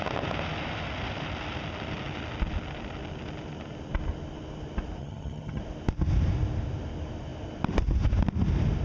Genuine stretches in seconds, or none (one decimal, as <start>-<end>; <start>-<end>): 0.0-5.0; 5.6-8.8